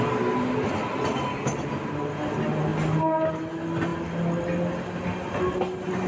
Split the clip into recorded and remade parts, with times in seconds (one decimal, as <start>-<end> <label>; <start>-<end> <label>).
0.0-6.1 recorded